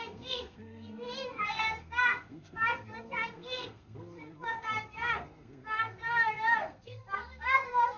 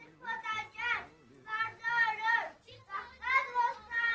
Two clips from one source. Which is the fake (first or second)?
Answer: first